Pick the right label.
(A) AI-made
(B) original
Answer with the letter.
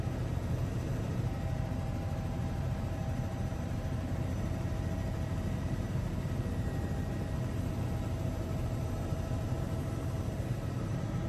A